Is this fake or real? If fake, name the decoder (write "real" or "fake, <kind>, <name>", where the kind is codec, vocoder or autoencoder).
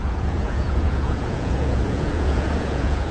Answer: fake, vocoder, Vocos